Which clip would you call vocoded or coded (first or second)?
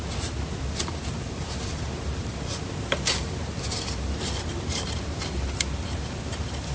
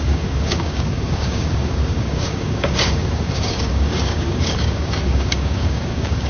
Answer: second